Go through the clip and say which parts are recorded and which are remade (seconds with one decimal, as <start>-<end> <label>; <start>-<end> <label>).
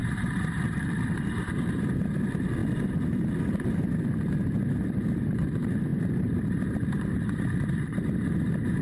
0.0-2.6 remade; 2.6-3.4 recorded; 3.4-8.8 remade